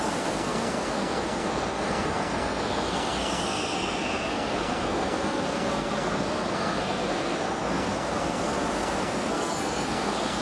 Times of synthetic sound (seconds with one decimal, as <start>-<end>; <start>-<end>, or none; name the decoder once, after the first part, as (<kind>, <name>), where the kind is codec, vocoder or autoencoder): 0.0-10.4 (codec, SNAC)